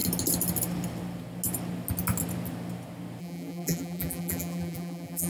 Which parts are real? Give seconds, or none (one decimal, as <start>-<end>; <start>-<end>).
0.0-3.2